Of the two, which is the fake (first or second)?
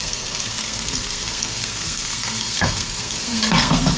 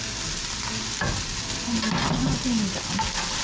first